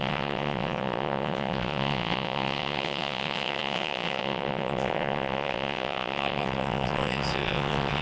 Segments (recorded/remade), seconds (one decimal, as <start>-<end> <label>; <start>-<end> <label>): 0.0-8.0 remade